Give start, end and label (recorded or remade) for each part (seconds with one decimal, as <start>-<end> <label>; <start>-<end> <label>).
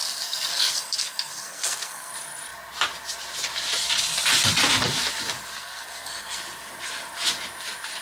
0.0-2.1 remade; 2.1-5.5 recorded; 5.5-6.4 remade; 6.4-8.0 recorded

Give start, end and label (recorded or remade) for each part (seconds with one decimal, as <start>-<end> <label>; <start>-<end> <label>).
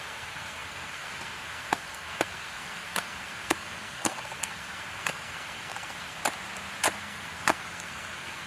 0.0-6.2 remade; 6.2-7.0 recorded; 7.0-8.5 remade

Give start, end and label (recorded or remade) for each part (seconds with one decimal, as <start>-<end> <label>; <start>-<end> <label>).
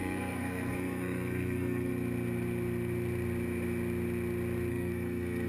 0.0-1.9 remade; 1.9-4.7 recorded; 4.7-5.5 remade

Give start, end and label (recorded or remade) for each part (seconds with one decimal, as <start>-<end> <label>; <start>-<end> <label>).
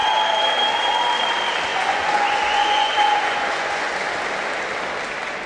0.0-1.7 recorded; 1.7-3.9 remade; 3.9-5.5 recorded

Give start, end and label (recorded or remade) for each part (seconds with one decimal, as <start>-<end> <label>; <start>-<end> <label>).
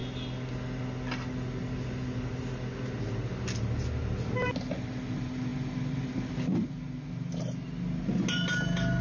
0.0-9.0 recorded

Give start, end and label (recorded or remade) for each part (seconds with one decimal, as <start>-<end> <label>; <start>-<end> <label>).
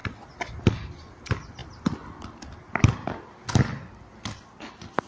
0.0-5.1 recorded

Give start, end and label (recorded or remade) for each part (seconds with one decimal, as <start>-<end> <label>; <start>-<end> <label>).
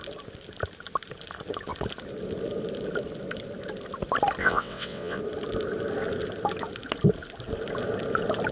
0.0-4.4 recorded; 4.4-5.2 remade; 5.2-8.5 recorded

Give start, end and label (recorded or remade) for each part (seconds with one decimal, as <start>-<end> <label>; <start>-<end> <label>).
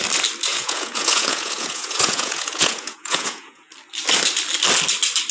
0.0-0.5 recorded; 0.5-3.7 remade; 3.7-5.3 recorded